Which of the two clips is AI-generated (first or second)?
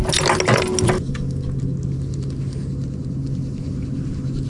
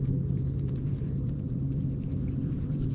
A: second